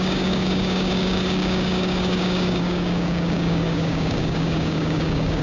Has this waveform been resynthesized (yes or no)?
yes